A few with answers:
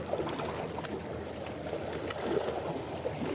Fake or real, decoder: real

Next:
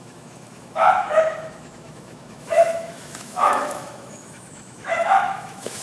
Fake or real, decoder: fake, autoencoder, DAC-VAE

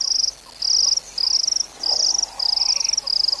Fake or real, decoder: real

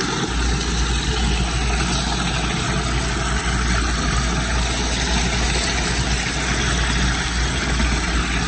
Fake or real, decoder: real